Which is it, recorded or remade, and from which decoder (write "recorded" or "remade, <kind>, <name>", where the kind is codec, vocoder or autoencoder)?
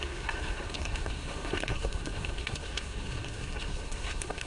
remade, codec, SNAC